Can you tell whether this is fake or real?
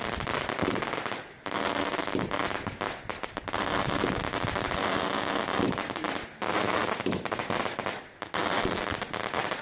real